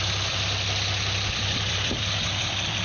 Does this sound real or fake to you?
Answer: fake